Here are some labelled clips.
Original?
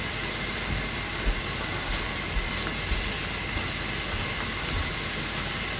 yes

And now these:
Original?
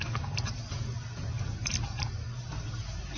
yes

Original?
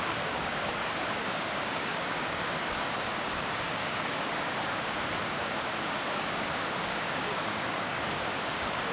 no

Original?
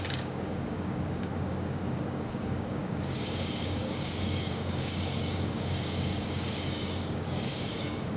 no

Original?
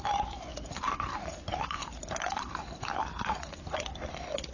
yes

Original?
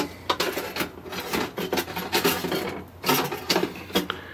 yes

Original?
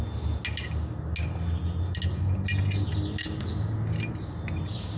yes